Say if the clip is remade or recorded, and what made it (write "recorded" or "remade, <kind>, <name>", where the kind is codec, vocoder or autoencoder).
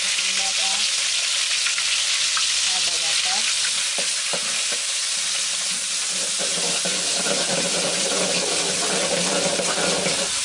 recorded